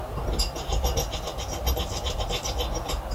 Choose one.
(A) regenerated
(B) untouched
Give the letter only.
B